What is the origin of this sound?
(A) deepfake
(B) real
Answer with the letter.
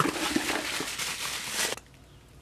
B